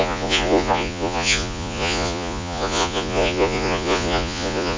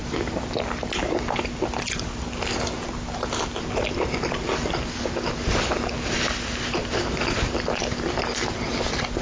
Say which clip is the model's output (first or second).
first